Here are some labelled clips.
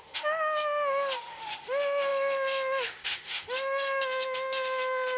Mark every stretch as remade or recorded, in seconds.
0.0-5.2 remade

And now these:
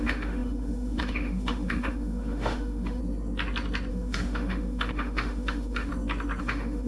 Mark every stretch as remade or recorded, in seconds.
0.0-3.0 remade; 3.0-3.9 recorded; 3.9-5.9 remade; 5.9-6.4 recorded; 6.4-6.9 remade

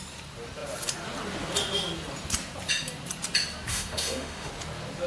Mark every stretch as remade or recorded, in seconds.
0.0-3.7 recorded; 3.7-4.5 remade; 4.5-5.1 recorded

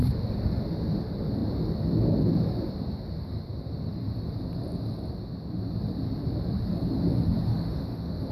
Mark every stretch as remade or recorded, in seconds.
0.0-7.5 recorded; 7.5-8.3 remade

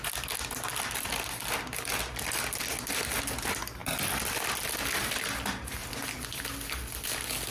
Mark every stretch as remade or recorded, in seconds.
0.0-7.5 recorded

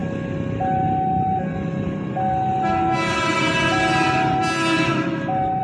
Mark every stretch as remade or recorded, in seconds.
0.0-4.9 recorded; 4.9-5.6 remade